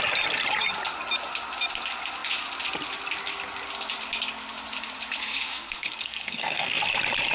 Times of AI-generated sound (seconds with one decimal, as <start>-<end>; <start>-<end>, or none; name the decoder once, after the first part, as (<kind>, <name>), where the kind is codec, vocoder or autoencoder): 5.2-6.8 (codec, SNAC)